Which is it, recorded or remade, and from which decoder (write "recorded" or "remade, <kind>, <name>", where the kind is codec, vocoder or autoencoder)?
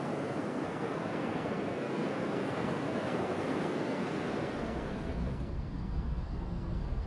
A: remade, codec, SNAC